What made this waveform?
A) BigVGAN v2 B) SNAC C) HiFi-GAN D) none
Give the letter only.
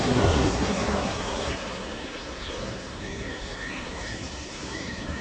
B